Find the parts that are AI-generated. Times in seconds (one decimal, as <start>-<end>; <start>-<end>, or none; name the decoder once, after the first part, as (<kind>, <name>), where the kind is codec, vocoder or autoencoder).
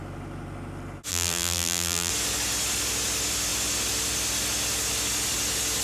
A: 1.1-2.1 (vocoder, BigVGAN v2)